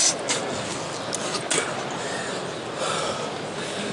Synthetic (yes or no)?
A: no